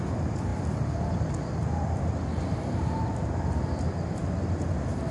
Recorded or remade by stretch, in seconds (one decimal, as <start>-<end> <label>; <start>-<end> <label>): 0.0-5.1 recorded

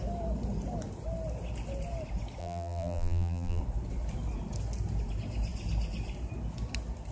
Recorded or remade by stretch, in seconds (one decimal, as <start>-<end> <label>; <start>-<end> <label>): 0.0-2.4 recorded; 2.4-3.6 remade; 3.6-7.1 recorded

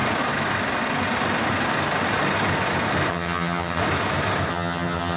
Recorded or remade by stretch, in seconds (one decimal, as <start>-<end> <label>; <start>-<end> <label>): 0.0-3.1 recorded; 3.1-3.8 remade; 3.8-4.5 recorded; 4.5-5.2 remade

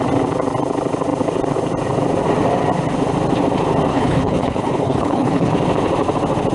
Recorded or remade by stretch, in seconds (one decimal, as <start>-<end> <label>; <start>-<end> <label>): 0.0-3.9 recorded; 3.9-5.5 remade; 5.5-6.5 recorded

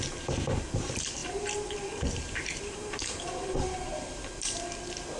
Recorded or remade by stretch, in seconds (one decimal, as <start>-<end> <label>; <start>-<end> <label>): 0.0-1.2 recorded; 1.2-4.3 remade; 4.3-5.2 recorded